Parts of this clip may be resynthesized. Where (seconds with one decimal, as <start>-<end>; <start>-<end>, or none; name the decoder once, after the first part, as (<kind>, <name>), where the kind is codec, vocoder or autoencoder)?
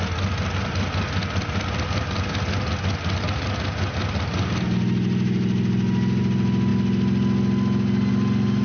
none